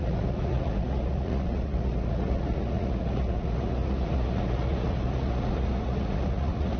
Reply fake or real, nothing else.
fake